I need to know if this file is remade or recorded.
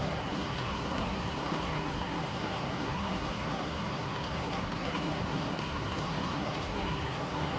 remade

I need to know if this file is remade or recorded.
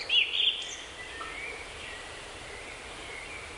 recorded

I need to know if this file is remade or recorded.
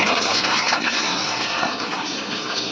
remade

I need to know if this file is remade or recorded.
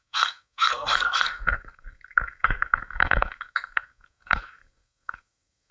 remade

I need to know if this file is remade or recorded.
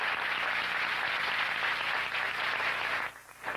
recorded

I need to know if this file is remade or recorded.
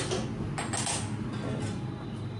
recorded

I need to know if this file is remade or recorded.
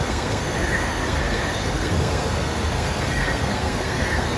remade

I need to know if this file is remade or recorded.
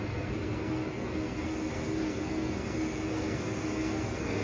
remade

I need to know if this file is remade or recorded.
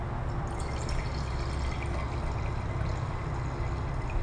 recorded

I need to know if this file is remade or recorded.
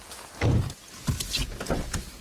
recorded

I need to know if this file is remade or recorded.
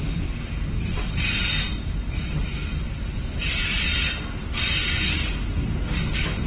recorded